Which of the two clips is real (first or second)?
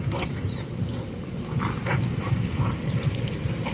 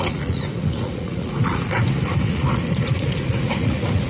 first